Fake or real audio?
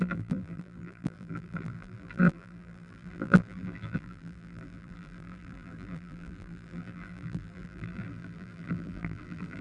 fake